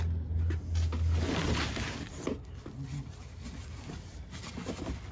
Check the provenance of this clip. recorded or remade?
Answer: recorded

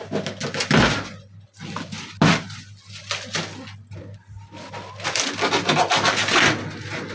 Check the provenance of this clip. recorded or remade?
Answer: recorded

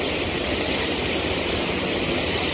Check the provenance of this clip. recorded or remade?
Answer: recorded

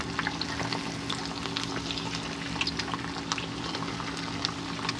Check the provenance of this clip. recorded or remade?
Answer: recorded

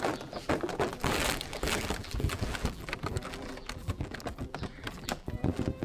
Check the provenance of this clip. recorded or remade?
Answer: remade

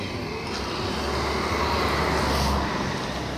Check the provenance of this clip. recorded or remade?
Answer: recorded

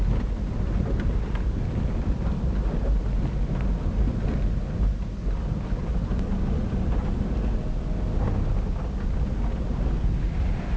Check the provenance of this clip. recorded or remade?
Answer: recorded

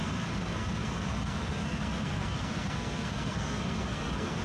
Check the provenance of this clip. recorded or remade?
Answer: remade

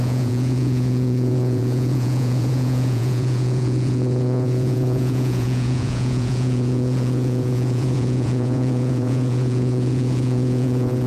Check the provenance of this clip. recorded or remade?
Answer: remade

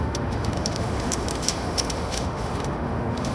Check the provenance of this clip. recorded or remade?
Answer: remade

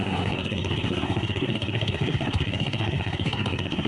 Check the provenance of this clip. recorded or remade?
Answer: remade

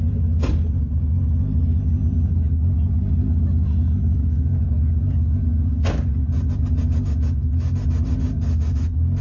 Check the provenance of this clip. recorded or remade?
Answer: recorded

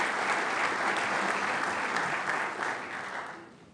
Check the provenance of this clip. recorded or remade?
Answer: recorded